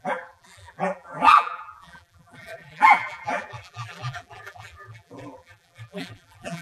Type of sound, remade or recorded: remade